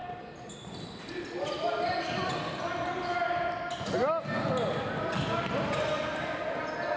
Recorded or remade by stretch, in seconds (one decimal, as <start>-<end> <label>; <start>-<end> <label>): 0.0-7.0 recorded